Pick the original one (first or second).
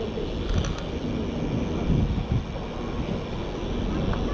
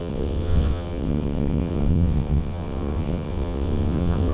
first